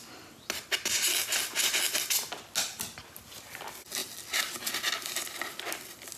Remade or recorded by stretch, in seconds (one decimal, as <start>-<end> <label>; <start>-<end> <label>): 0.0-6.2 recorded